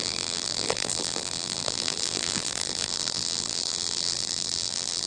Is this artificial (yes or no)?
yes